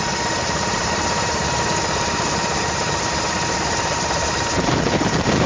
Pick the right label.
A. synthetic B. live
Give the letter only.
A